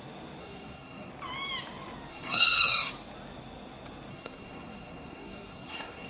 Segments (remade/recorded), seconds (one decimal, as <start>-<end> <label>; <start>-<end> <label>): 0.0-0.4 recorded; 0.4-1.1 remade; 1.1-2.1 recorded; 2.1-2.9 remade; 2.9-4.1 recorded; 4.1-6.1 remade